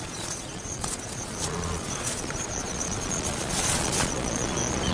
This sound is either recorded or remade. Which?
remade